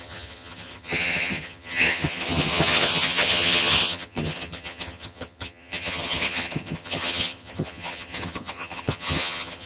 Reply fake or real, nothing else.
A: fake